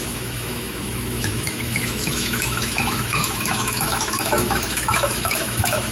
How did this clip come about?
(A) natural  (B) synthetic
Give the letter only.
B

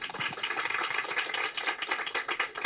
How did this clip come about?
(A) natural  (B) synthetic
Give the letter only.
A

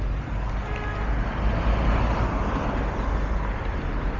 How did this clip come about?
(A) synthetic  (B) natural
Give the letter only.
B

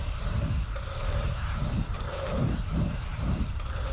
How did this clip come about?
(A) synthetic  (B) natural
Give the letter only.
A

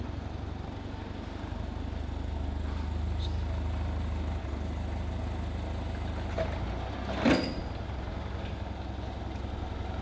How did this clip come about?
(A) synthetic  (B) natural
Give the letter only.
B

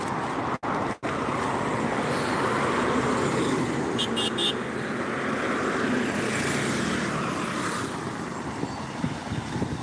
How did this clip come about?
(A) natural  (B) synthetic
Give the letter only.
A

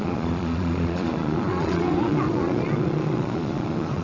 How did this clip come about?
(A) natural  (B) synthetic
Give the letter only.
B